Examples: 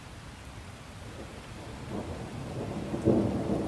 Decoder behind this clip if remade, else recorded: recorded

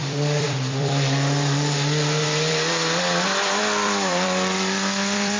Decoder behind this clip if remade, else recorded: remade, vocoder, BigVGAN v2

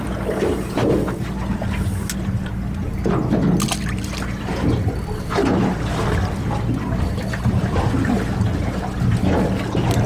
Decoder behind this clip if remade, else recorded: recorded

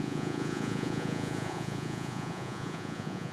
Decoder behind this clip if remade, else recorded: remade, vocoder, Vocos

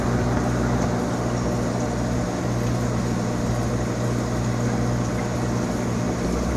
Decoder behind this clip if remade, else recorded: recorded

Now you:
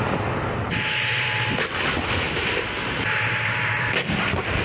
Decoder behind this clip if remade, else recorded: recorded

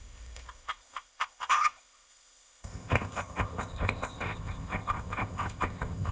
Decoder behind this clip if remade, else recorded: remade, codec, ZipCodec